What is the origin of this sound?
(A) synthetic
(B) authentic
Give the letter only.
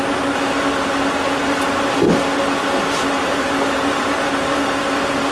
B